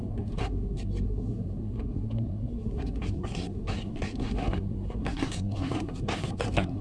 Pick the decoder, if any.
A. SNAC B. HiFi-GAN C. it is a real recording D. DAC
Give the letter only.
A